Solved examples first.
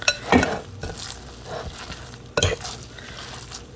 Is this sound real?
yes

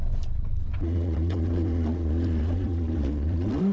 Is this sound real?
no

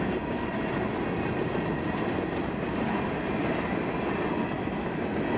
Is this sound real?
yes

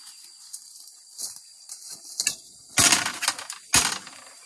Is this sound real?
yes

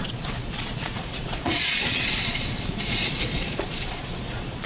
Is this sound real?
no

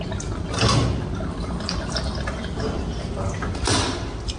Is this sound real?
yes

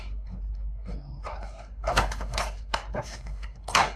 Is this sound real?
no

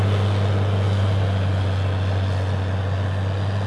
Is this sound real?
yes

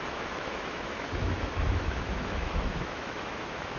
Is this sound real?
no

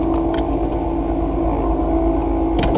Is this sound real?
yes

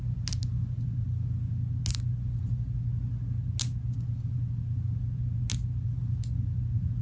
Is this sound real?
yes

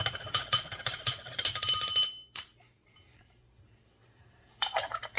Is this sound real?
yes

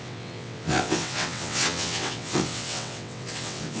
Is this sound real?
no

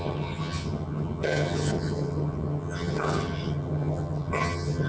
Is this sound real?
no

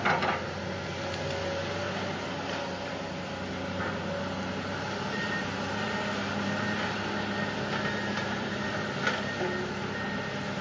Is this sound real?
yes